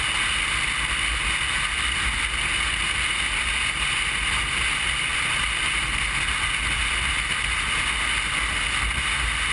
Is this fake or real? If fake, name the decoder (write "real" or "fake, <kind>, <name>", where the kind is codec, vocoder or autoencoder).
real